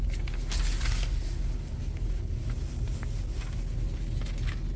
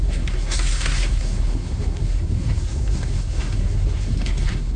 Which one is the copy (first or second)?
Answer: second